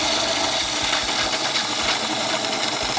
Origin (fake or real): real